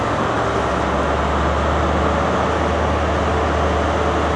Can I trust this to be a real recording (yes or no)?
yes